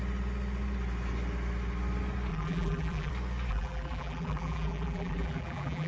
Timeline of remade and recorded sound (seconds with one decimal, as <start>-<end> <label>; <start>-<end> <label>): 0.0-2.3 recorded; 2.3-3.1 remade; 3.1-3.5 recorded; 3.5-5.9 remade